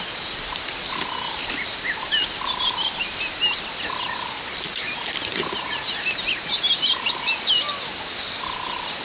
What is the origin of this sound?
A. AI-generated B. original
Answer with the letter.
B